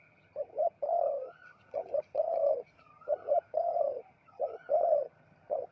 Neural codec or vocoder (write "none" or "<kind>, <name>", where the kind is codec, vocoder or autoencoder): vocoder, HiFi-GAN